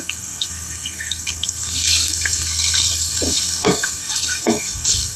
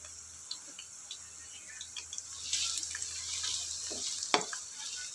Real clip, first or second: second